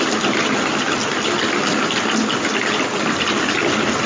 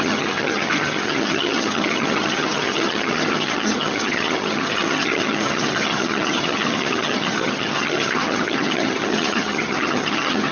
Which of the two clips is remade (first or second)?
second